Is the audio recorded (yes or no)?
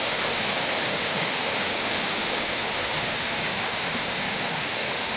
no